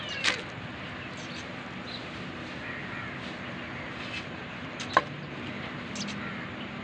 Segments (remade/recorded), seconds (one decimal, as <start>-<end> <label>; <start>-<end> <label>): 0.0-6.8 recorded